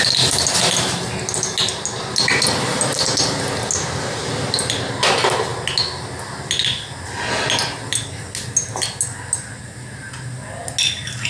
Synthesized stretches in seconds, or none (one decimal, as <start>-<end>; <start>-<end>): none